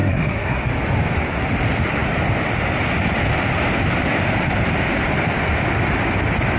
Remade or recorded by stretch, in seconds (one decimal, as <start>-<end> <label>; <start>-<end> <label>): 0.0-0.7 remade; 0.7-6.6 recorded